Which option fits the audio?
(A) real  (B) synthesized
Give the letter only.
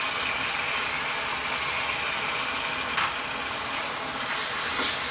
A